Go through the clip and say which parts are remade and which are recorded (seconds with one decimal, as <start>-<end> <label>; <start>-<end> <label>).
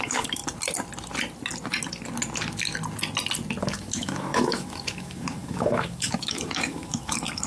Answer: 0.0-0.4 remade; 0.4-3.6 recorded; 3.6-7.5 remade